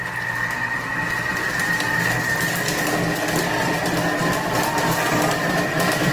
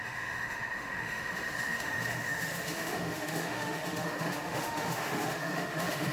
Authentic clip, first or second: first